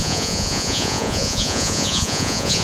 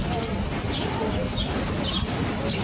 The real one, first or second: second